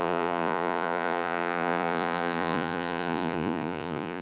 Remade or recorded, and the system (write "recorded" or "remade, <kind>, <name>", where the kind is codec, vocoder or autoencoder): remade, vocoder, Vocos